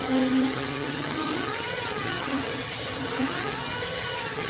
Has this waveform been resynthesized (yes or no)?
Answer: yes